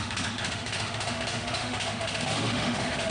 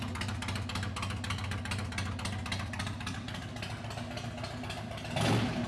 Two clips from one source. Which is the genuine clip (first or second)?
second